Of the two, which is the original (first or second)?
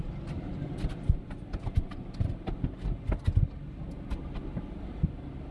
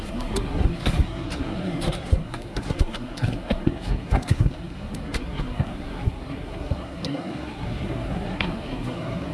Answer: first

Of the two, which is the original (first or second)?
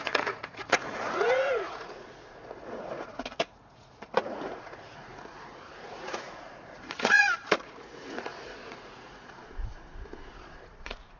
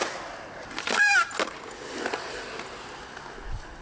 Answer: second